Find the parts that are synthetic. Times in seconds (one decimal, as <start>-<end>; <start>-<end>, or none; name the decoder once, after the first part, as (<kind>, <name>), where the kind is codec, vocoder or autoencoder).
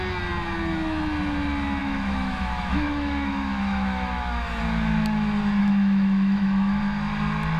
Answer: 1.8-4.6 (autoencoder, DAC-VAE); 5.6-6.8